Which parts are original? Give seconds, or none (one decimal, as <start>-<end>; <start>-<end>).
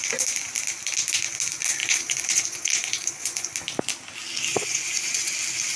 0.0-1.8; 3.5-4.5; 5.3-5.8